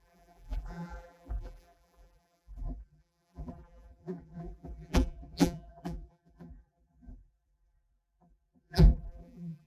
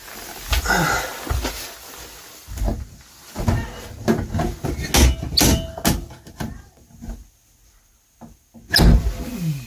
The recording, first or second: second